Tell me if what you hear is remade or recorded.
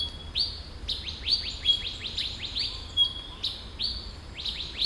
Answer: recorded